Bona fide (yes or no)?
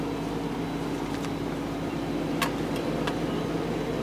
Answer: yes